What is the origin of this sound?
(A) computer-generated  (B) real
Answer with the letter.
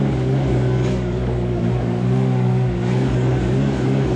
A